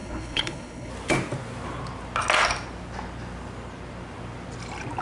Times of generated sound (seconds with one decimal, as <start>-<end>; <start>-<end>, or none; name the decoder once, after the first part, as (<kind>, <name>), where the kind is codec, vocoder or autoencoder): 0.0-0.9 (codec, HILCodec)